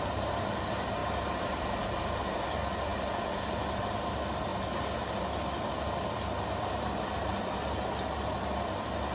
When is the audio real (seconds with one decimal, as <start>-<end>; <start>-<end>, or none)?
0.0-9.1